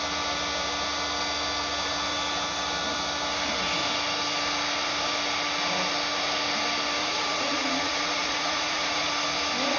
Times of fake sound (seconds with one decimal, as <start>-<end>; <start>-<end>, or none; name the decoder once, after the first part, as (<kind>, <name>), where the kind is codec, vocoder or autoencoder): 7.0-9.1 (vocoder, Vocos)